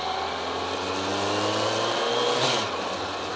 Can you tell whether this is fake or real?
real